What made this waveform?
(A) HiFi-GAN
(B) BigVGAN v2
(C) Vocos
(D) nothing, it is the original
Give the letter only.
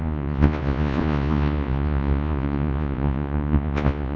C